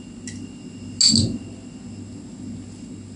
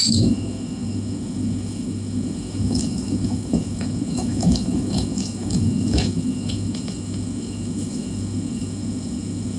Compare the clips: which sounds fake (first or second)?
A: second